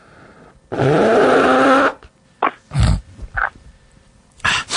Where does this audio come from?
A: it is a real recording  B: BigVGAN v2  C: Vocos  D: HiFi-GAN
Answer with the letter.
B